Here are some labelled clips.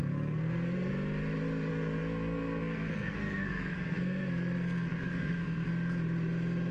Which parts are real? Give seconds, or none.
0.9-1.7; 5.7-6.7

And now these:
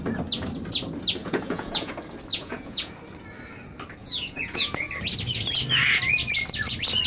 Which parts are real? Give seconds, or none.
0.0-1.2; 1.9-2.3; 2.9-4.0; 4.9-7.1

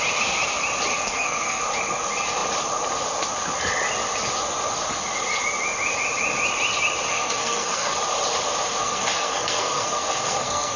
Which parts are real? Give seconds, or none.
0.0-0.9; 1.6-7.1; 7.9-8.8